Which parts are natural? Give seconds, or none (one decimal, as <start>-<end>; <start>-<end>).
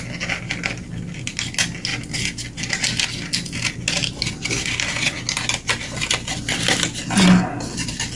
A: 0.0-8.2